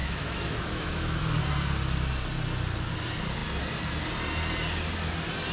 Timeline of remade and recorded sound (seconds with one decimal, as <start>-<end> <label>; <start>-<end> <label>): 0.0-1.2 remade; 1.2-5.5 recorded